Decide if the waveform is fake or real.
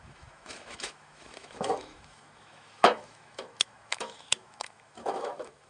fake